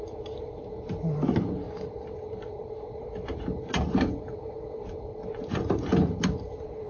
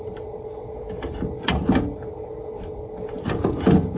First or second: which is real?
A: second